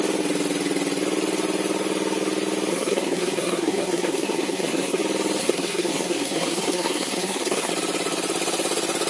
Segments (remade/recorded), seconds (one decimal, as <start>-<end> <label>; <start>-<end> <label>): 0.0-2.7 recorded; 2.7-5.0 remade; 5.0-5.4 recorded; 5.4-7.7 remade; 7.7-9.1 recorded